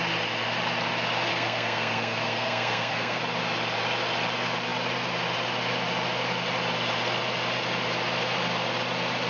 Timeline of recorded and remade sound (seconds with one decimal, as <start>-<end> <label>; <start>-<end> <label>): 0.0-1.3 recorded; 1.3-3.2 remade; 3.2-9.3 recorded